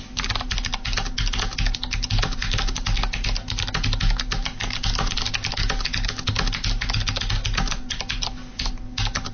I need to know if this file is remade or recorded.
recorded